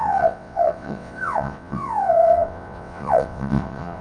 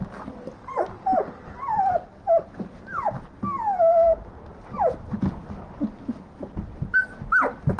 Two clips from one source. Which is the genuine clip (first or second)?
second